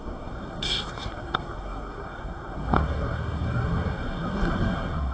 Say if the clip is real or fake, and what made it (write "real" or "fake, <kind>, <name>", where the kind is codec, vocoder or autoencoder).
fake, codec, SNAC